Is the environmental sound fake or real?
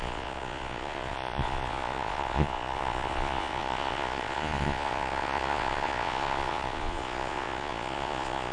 fake